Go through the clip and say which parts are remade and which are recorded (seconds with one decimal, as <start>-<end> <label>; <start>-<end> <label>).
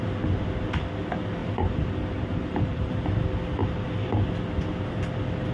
0.0-1.4 recorded; 1.4-2.9 remade; 2.9-3.6 recorded; 3.6-4.1 remade; 4.1-5.5 recorded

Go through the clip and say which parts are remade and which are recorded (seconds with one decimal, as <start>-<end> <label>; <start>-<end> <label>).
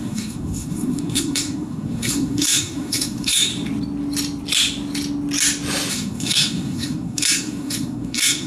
0.0-3.5 remade; 3.5-5.9 recorded; 5.9-8.5 remade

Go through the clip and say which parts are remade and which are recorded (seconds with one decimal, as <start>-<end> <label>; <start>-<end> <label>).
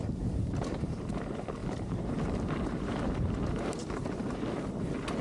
0.0-1.1 remade; 1.1-1.6 recorded; 1.6-4.7 remade; 4.7-5.2 recorded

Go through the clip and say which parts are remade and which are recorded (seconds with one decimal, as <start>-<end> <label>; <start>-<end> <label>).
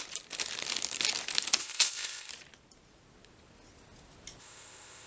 0.0-1.6 recorded; 1.6-2.3 remade; 2.3-4.4 recorded; 4.4-5.1 remade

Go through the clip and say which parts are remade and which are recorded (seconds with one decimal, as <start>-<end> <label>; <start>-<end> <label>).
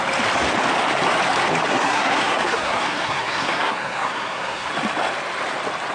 0.0-1.7 recorded; 1.7-4.7 remade; 4.7-5.9 recorded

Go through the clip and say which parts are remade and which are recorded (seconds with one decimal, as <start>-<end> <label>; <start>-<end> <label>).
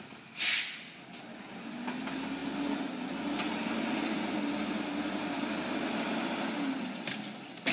0.0-7.7 recorded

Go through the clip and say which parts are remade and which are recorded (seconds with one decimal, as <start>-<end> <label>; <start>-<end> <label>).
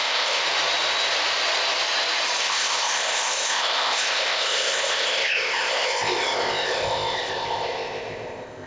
0.0-0.4 remade; 0.4-2.4 recorded; 2.4-8.7 remade